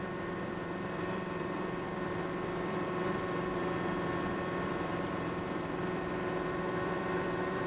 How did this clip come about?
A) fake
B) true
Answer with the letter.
A